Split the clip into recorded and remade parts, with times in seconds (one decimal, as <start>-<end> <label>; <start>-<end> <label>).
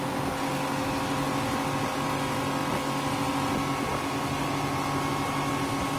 0.0-6.0 recorded